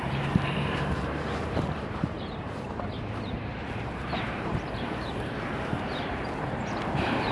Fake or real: fake